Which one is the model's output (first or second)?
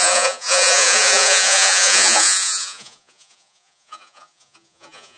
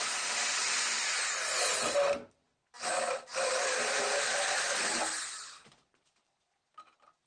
first